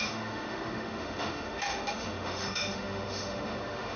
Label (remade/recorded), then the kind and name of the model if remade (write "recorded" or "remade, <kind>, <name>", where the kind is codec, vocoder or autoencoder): remade, autoencoder, DAC-VAE